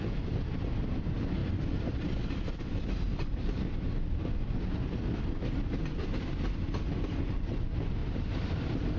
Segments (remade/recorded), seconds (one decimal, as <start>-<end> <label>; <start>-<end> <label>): 0.0-1.4 recorded; 1.4-4.7 remade; 4.7-8.0 recorded; 8.0-9.0 remade